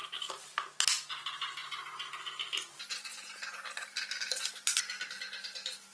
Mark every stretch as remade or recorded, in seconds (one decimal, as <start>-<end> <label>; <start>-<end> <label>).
0.0-5.9 recorded